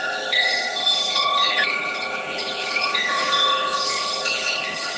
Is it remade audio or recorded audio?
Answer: remade